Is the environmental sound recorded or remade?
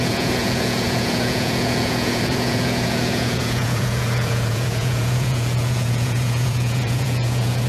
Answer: remade